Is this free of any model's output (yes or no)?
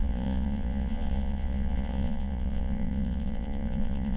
no